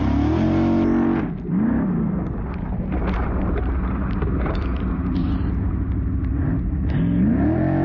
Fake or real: real